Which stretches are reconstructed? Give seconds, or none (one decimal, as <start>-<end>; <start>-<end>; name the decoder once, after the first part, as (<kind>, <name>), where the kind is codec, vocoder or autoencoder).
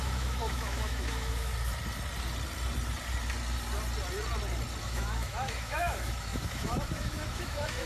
0.0-1.5 (autoencoder, DAC-VAE); 4.8-7.9